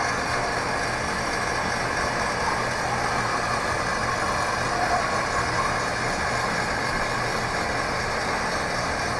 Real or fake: real